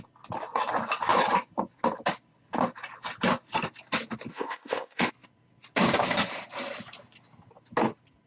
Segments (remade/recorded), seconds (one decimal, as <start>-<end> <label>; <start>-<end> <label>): 0.0-4.3 recorded; 4.3-5.1 remade; 5.1-8.3 recorded